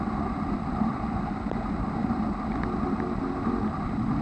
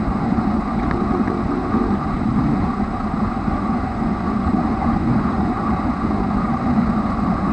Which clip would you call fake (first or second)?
second